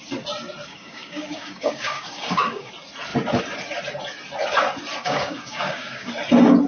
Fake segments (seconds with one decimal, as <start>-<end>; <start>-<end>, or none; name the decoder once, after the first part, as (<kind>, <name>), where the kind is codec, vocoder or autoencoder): 0.7-2.7 (codec, DAC); 5.0-6.1